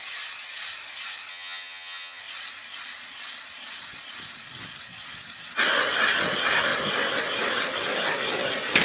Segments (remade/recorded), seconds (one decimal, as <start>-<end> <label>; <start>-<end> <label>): 0.0-1.3 recorded; 1.3-2.2 remade; 2.2-8.8 recorded